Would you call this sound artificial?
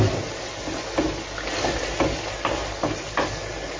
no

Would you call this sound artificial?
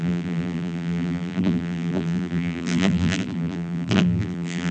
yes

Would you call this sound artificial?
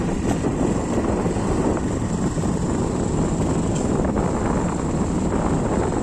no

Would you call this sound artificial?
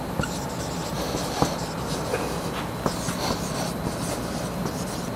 no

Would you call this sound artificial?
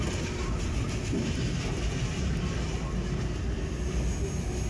no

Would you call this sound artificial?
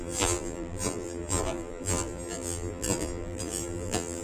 yes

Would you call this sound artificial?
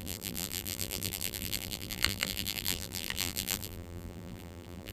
yes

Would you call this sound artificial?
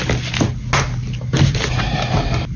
no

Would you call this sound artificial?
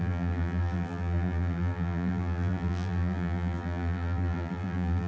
yes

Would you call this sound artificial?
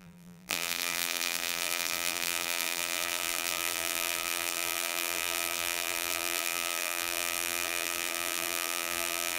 yes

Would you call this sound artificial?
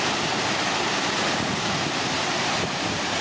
no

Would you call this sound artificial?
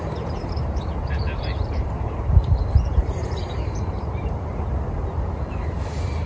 yes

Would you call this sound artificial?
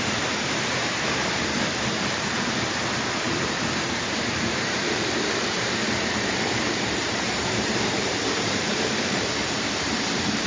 yes